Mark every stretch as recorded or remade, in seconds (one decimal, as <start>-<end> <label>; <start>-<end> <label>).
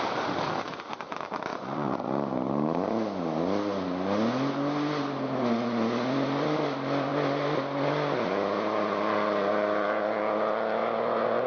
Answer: 0.0-1.5 recorded; 1.5-2.1 remade; 2.1-10.8 recorded; 10.8-11.5 remade